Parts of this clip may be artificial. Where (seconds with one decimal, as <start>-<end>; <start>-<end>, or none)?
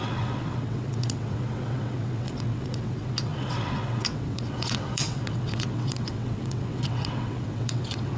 0.0-8.2